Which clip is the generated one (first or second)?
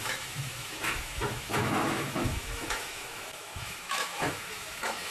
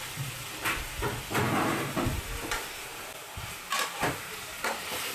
first